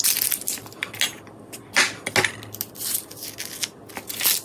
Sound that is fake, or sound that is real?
real